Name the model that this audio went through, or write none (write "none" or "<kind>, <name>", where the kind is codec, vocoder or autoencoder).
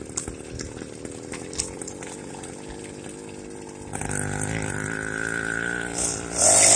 none